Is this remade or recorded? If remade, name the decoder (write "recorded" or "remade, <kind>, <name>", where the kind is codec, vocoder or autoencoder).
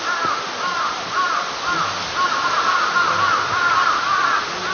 recorded